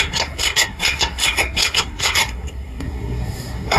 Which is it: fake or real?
fake